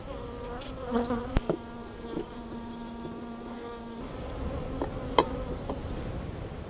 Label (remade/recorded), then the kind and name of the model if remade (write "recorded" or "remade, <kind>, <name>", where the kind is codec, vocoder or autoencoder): recorded